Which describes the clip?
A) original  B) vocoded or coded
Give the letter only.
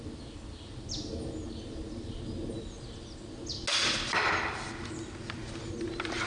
A